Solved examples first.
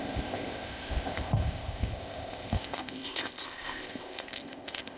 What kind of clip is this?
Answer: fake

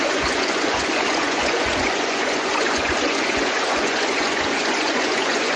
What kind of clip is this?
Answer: fake